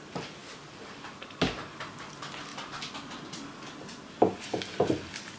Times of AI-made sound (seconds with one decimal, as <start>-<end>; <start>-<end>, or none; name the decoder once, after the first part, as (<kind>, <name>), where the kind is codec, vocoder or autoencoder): none